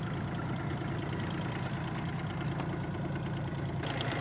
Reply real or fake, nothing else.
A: real